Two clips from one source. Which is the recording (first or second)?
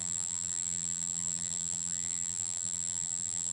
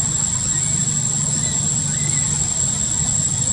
second